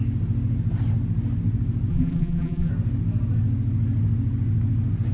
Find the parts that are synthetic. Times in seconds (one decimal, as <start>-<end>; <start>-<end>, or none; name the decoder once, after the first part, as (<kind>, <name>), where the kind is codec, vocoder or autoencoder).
1.9-2.7 (vocoder, BigVGAN v2)